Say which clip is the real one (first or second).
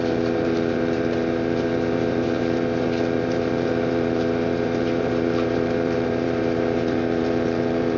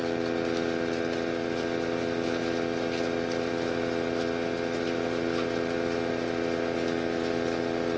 second